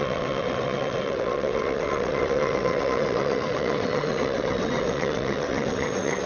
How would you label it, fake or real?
fake